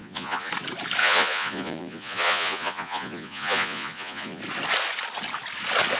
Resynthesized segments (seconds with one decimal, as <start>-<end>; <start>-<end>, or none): 0.0-0.5; 1.0-4.4